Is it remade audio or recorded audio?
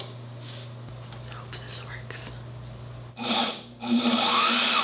recorded